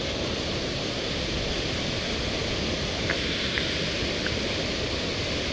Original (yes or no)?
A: yes